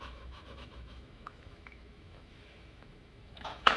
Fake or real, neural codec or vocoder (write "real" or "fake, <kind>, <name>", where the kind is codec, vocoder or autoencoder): fake, autoencoder, DAC-VAE